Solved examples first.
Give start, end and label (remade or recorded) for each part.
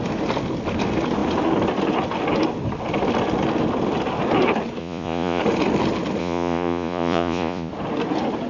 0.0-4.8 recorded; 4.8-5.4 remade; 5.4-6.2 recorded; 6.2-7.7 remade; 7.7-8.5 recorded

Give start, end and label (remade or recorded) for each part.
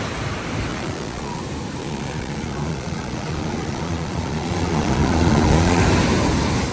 0.0-0.7 recorded; 0.7-1.4 remade; 1.4-1.8 recorded; 1.8-5.8 remade; 5.8-6.7 recorded